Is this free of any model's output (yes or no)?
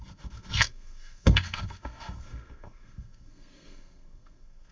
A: no